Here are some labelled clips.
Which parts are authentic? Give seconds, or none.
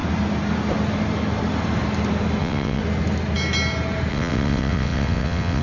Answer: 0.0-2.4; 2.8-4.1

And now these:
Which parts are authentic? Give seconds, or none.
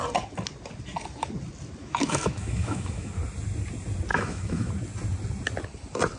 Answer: 0.0-1.8; 3.1-4.1; 4.7-6.2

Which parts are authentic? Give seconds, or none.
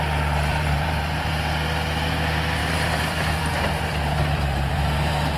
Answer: 0.0-0.5; 1.3-2.6